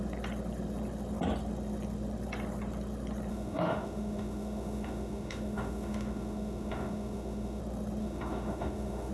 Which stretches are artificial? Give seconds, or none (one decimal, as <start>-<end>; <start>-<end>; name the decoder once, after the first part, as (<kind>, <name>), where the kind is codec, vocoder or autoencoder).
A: 3.3-7.6 (autoencoder, DAC-VAE); 8.0-9.1